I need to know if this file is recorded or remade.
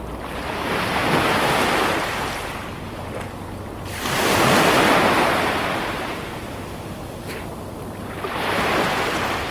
recorded